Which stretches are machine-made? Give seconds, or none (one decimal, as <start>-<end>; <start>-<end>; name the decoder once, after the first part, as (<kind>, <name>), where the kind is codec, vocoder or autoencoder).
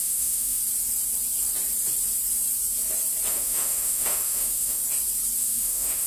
0.0-0.6 (autoencoder, DAC-VAE); 3.3-4.8; 5.4-6.1